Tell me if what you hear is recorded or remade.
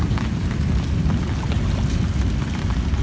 recorded